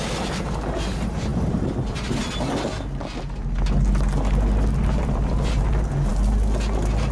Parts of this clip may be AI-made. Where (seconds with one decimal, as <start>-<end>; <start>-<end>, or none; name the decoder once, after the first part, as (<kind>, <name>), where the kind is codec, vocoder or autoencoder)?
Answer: none